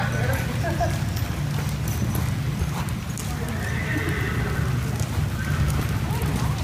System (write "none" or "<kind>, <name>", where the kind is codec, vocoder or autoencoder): none